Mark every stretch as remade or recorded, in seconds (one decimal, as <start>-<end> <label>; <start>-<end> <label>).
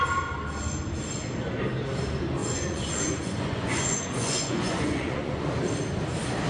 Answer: 0.0-2.4 recorded; 2.4-5.5 remade; 5.5-6.5 recorded